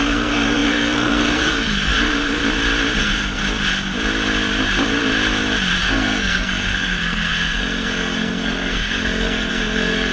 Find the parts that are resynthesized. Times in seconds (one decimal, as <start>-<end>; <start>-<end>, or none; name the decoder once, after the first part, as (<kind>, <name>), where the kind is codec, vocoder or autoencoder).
0.0-2.4 (codec, SNAC); 3.0-3.4; 5.8-10.1